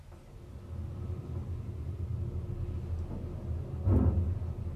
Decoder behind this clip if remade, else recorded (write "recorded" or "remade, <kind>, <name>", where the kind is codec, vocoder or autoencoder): recorded